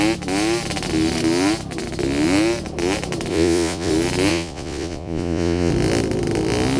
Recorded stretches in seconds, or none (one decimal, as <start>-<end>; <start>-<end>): 0.0-3.3; 3.9-4.3; 5.7-6.8